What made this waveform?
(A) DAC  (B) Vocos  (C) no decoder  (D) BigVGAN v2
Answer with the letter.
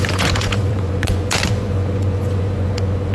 B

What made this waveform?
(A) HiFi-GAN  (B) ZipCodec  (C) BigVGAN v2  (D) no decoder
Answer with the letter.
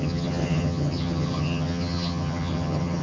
A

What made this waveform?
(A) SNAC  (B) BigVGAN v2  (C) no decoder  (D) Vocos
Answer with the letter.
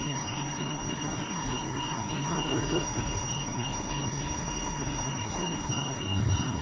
A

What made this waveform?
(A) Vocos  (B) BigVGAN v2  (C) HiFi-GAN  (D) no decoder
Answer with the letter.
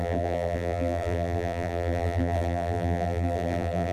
B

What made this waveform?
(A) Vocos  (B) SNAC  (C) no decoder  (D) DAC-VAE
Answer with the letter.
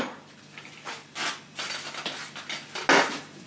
C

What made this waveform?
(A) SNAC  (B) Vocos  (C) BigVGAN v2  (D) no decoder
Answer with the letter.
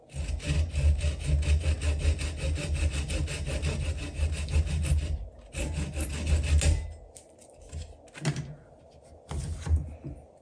D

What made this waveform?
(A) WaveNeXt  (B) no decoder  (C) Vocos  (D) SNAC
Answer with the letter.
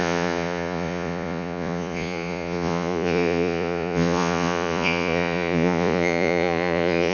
C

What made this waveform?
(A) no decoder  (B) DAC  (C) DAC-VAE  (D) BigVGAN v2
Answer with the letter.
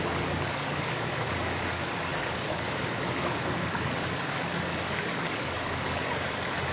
B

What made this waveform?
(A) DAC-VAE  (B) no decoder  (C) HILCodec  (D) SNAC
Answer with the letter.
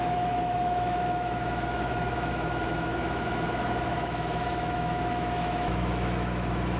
A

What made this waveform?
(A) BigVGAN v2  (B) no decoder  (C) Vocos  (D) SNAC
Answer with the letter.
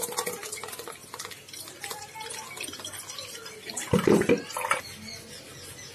B